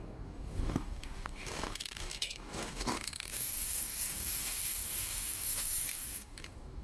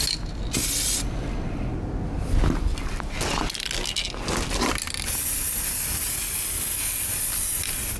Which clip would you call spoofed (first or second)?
first